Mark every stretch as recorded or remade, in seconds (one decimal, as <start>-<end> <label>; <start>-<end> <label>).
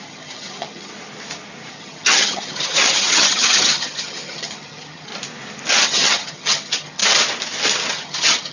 0.0-0.9 remade; 0.9-1.7 recorded; 1.7-5.1 remade; 5.1-5.8 recorded; 5.8-7.0 remade; 7.0-7.9 recorded; 7.9-8.5 remade